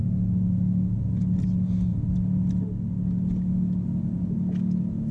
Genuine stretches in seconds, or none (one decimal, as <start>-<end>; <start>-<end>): 0.0-5.1